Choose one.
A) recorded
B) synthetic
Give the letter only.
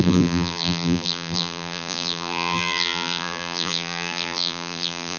B